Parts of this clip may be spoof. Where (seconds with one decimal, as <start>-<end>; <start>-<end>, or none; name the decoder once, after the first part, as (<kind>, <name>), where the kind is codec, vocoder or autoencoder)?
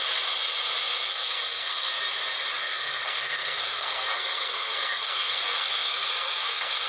1.1-1.9 (codec, SNAC); 2.6-6.9